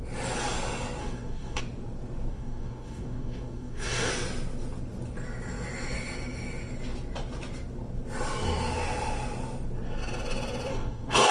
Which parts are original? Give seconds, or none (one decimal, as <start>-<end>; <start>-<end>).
0.0-1.0; 1.6-2.3; 4.1-10.7